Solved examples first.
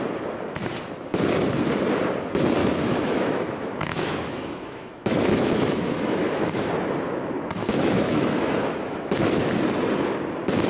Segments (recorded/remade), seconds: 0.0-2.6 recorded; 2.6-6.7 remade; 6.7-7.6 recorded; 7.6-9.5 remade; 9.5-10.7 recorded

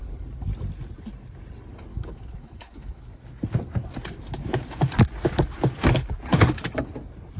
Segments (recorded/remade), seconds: 0.0-1.9 recorded; 1.9-3.1 remade; 3.1-6.3 recorded; 6.3-6.8 remade; 6.8-7.4 recorded

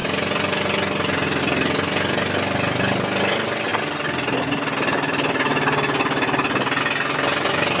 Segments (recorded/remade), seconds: 0.0-7.8 recorded

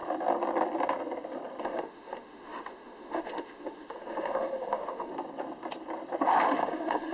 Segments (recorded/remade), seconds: 0.0-1.6 recorded; 1.6-5.1 remade; 5.1-6.3 recorded; 6.3-7.1 remade